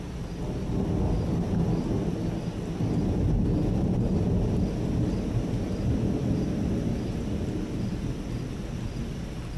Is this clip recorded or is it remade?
recorded